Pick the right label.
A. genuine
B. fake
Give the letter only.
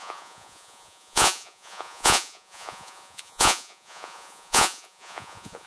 B